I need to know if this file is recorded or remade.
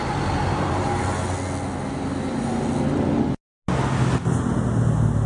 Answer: recorded